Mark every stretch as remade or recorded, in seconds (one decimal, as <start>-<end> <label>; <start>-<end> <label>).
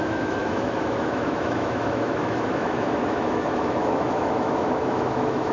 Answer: 0.0-5.5 remade